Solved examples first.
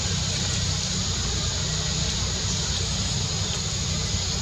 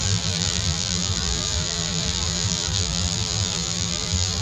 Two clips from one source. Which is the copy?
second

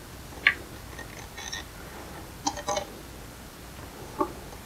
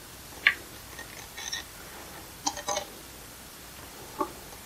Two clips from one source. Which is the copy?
second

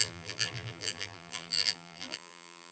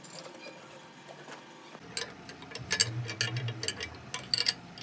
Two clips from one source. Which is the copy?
first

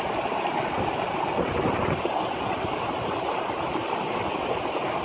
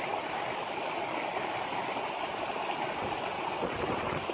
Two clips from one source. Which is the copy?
first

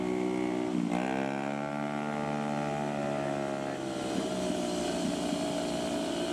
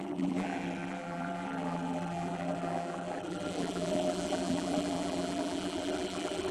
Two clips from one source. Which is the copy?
second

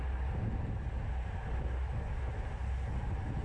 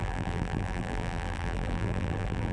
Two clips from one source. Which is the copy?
second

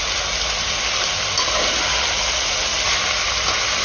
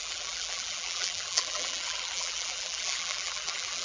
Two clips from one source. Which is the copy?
second